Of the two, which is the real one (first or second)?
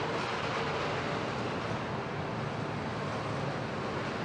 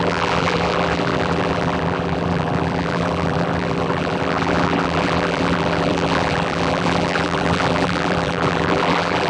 first